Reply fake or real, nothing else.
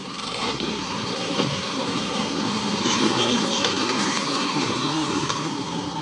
fake